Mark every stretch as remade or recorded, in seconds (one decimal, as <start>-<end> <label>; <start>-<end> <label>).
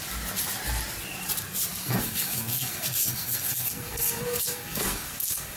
0.0-1.8 recorded; 1.8-5.6 remade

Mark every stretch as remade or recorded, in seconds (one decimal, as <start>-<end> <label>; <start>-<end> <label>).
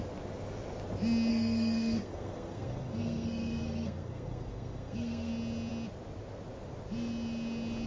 0.0-1.3 recorded; 1.3-5.3 remade; 5.3-7.9 recorded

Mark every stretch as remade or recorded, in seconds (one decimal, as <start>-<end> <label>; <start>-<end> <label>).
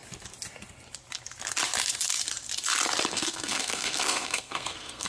0.0-3.1 recorded; 3.1-5.1 remade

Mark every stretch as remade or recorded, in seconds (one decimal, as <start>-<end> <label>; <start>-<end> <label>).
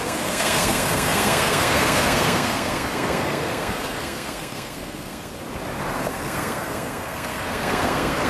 0.0-5.3 remade; 5.3-6.1 recorded; 6.1-8.3 remade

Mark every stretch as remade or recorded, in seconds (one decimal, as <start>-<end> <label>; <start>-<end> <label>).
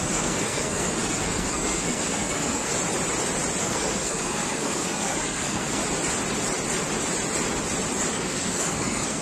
0.0-2.7 remade; 2.7-3.6 recorded; 3.6-5.8 remade; 5.8-8.1 recorded; 8.1-9.2 remade